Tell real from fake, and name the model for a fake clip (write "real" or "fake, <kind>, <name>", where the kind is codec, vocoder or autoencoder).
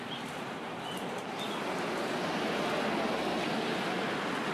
real